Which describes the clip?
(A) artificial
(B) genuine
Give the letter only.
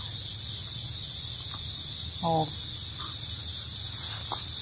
B